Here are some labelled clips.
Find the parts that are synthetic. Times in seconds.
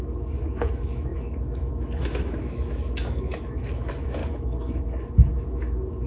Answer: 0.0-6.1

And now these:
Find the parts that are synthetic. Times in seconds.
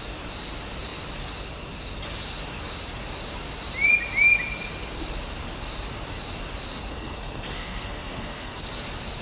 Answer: 6.9-8.6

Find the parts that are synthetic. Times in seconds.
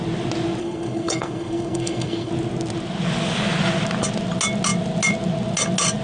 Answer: 0.6-2.3